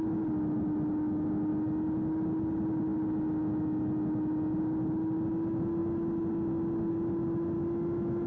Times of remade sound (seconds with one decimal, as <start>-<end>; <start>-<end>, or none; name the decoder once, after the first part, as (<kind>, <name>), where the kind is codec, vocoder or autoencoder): none